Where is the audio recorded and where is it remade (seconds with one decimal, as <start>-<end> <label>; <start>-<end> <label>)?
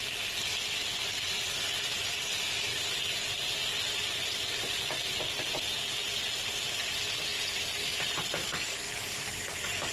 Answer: 0.0-8.4 recorded; 8.4-9.9 remade